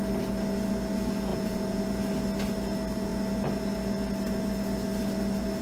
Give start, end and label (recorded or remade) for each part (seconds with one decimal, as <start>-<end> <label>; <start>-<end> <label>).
0.0-1.3 recorded; 1.3-1.8 remade; 1.8-5.6 recorded